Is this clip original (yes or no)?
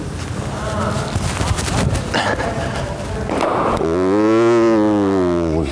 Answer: yes